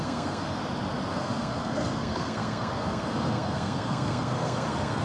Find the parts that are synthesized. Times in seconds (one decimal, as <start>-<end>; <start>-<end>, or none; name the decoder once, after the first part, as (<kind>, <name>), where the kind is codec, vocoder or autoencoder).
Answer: 0.0-0.6 (codec, SNAC); 1.1-5.0